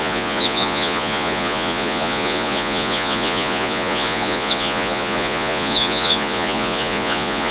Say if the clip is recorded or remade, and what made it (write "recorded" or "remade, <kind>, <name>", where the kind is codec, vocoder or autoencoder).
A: remade, vocoder, Vocos